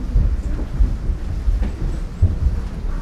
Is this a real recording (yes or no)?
yes